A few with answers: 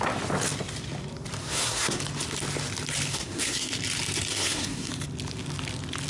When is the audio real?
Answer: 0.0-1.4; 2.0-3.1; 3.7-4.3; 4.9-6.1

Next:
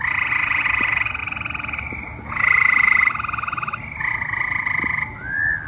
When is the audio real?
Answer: 0.0-5.7

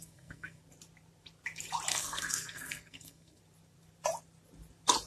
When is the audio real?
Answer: 0.6-1.9; 3.4-5.1

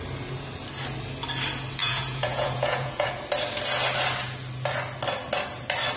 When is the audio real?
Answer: 0.0-1.8; 3.1-6.0

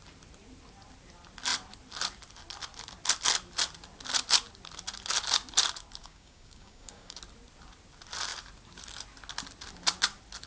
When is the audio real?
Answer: 0.0-6.0; 7.2-10.5

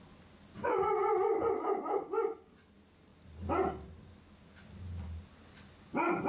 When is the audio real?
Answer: 0.0-6.3

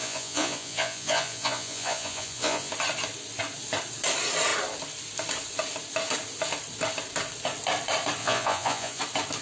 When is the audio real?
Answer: 2.7-8.2; 9.0-9.4

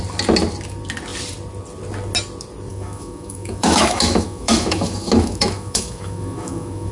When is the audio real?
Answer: 0.0-2.7